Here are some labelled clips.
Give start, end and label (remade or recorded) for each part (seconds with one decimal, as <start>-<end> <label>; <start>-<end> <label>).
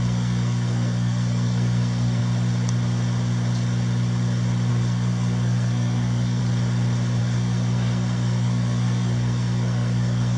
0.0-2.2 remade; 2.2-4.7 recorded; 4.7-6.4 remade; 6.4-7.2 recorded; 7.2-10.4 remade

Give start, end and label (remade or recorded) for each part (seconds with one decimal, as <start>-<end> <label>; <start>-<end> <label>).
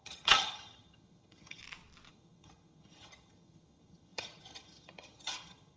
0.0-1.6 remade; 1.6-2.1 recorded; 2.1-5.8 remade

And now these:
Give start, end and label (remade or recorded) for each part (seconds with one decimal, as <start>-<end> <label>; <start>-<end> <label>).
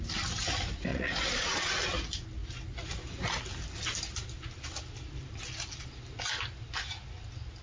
0.0-0.9 recorded; 0.9-1.7 remade; 1.7-7.6 recorded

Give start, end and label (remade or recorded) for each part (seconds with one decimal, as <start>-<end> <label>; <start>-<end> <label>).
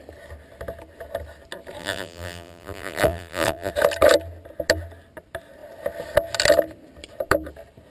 0.0-1.8 recorded; 1.8-3.7 remade; 3.7-7.9 recorded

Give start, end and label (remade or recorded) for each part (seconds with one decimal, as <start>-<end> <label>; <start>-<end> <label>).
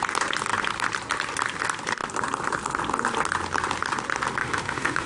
0.0-4.4 recorded; 4.4-5.1 remade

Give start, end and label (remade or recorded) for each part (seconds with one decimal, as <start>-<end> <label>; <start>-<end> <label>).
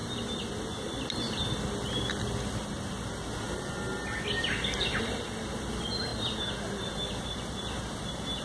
0.0-8.4 recorded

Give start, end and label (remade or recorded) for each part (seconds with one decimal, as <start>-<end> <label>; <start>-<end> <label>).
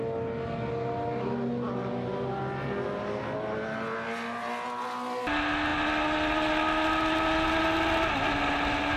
0.0-9.0 recorded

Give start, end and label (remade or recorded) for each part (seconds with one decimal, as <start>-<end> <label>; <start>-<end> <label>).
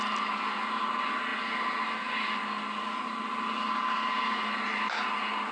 0.0-5.5 recorded